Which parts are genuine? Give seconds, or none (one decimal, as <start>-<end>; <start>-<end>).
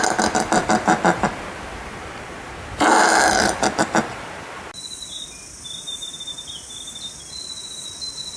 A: 0.0-8.4